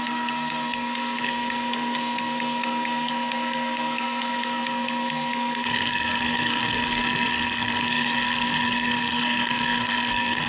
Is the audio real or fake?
fake